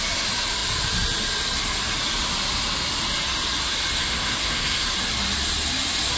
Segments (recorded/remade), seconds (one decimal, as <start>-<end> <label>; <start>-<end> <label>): 0.0-4.0 recorded; 4.0-4.9 remade; 4.9-6.2 recorded